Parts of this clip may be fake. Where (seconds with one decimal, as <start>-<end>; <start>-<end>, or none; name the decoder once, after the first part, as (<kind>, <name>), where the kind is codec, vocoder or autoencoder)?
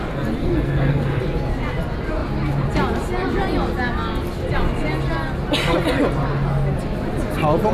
0.4-1.2 (codec, SNAC)